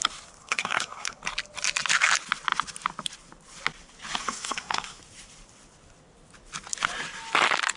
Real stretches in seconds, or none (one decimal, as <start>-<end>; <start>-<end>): 0.0-0.4; 1.2-4.2; 5.0-7.8